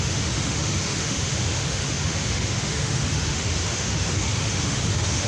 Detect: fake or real fake